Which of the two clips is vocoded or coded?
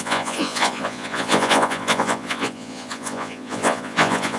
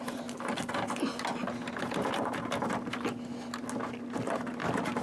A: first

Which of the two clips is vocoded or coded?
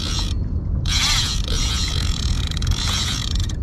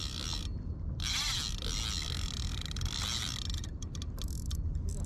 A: first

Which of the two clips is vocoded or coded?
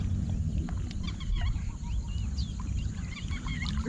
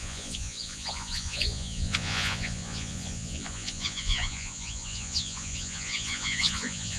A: second